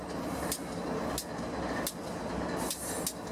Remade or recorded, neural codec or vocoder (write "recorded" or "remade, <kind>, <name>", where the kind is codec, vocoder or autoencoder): recorded